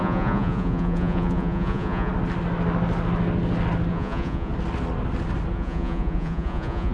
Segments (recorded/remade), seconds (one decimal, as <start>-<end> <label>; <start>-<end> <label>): 0.0-2.1 remade; 2.1-3.9 recorded; 3.9-4.5 remade; 4.5-5.5 recorded; 5.5-6.9 remade